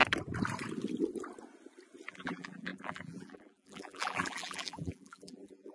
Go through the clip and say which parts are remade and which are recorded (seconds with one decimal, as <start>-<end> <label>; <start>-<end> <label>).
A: 0.0-2.1 recorded; 2.1-5.7 remade